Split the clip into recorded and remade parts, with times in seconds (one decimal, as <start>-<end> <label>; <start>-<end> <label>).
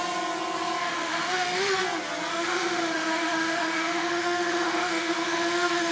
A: 0.0-0.8 recorded; 0.8-1.8 remade; 1.8-2.3 recorded; 2.3-5.9 remade